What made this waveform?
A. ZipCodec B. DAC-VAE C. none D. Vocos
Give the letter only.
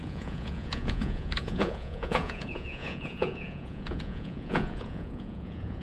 D